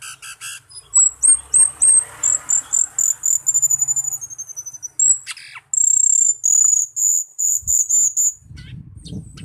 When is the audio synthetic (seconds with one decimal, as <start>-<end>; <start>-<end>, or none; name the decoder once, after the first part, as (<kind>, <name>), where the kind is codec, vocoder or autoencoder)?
7.3-7.9 (vocoder, BigVGAN v2)